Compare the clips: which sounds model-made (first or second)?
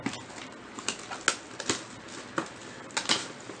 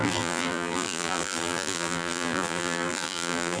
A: second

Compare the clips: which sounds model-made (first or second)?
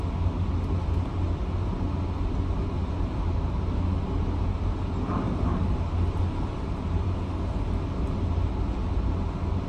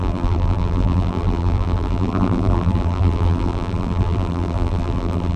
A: second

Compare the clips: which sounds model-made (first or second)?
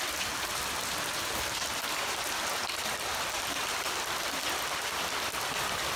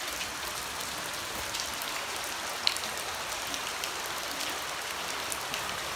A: first